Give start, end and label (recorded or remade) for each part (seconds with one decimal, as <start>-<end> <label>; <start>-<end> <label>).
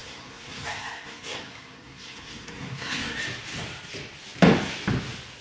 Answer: 0.0-3.2 remade; 3.2-5.4 recorded